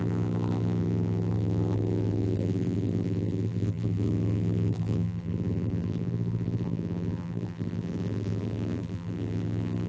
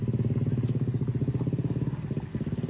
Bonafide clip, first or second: second